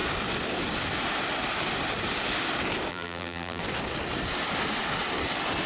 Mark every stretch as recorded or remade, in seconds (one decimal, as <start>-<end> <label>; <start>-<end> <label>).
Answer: 0.0-2.9 recorded; 2.9-3.6 remade; 3.6-5.7 recorded

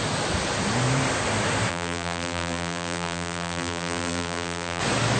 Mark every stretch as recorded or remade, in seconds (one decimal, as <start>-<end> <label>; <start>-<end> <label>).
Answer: 0.0-1.7 recorded; 1.7-4.8 remade; 4.8-5.2 recorded

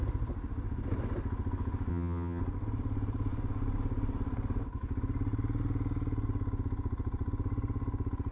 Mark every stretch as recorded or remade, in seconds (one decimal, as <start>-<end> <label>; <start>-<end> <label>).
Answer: 0.0-1.9 recorded; 1.9-2.4 remade; 2.4-8.3 recorded